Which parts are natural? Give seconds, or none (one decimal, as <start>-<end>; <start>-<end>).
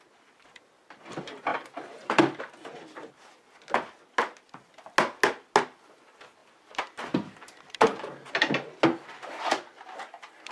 0.0-1.5; 2.4-6.4; 8.3-10.5